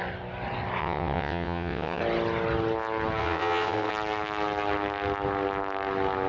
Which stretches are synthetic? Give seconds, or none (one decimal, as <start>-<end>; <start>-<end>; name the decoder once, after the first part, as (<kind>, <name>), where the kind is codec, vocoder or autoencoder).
0.8-2.0 (vocoder, WaveNeXt); 3.2-3.9